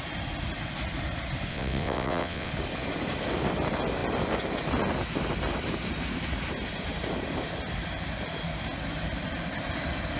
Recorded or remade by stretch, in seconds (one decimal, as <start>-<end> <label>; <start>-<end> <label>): 0.0-1.5 recorded; 1.5-2.5 remade; 2.5-10.2 recorded